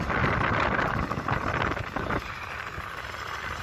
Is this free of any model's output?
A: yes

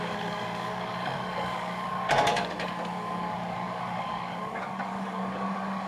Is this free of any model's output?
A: no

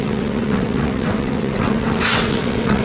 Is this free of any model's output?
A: no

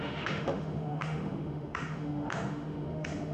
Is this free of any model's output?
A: no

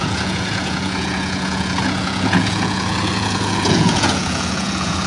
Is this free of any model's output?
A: no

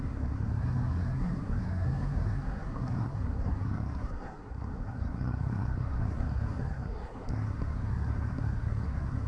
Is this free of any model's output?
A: no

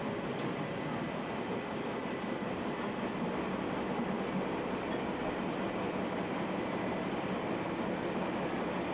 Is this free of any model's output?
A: yes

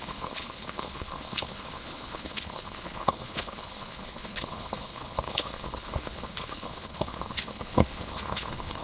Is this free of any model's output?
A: no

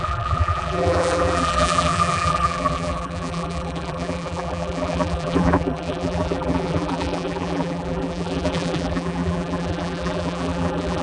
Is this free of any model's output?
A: no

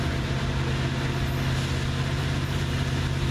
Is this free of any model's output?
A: yes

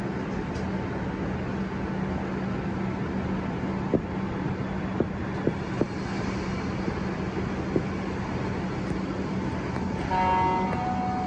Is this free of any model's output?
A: yes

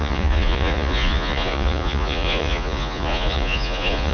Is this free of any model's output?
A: no